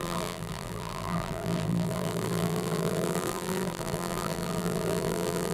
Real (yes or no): no